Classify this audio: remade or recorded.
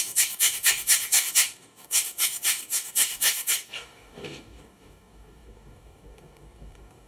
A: remade